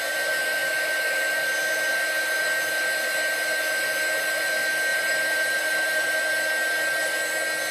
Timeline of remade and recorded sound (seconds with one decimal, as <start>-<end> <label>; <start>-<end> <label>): 0.0-4.9 recorded; 4.9-6.1 remade; 6.1-7.7 recorded